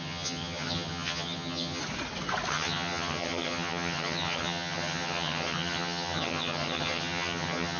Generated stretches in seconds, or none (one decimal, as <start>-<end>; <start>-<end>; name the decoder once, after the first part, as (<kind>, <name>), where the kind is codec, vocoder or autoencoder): 0.0-1.8 (vocoder, HiFi-GAN); 2.5-7.8